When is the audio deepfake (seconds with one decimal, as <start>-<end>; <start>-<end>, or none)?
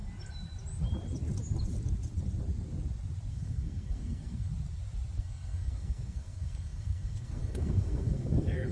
3.3-4.5; 5.2-8.7